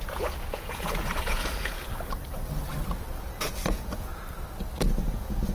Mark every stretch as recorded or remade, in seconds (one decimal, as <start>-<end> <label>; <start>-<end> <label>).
0.0-1.9 remade; 1.9-3.2 recorded; 3.2-4.1 remade; 4.1-4.9 recorded; 4.9-5.5 remade